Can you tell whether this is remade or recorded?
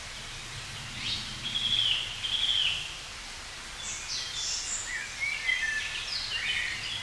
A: recorded